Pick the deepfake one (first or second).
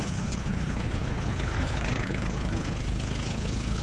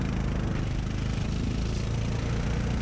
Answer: first